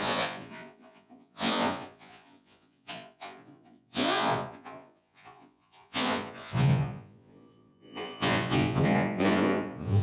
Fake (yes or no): yes